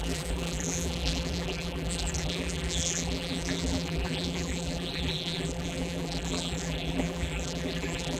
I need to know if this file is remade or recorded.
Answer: remade